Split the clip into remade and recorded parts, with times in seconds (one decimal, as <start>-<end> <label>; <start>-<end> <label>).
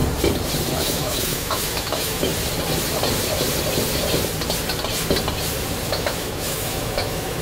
0.0-0.8 recorded; 0.8-2.3 remade; 2.3-5.9 recorded; 5.9-7.4 remade